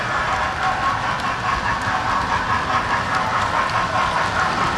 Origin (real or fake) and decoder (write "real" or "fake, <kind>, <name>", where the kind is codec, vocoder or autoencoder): real